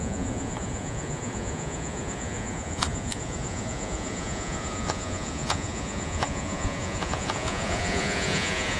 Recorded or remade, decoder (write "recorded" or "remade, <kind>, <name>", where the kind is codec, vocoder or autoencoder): remade, vocoder, Vocos